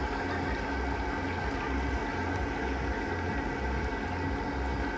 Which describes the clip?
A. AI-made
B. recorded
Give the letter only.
B